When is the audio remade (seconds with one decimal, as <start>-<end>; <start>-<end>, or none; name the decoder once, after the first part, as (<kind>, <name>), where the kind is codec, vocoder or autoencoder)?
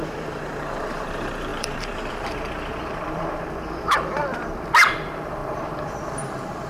0.0-4.2 (vocoder, BigVGAN v2); 4.9-6.7